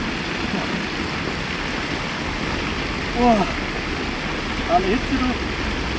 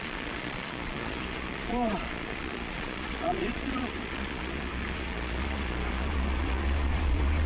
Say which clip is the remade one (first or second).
second